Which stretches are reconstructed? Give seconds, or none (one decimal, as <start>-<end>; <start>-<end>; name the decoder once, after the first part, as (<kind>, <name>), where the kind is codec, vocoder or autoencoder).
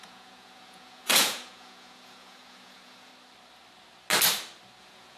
0.0-3.1 (vocoder, Vocos); 4.8-5.2